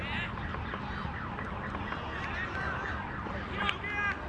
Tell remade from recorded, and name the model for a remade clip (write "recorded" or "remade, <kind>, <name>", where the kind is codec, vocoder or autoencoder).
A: recorded